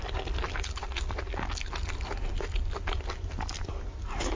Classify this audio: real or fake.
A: real